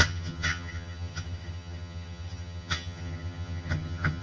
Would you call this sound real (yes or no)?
no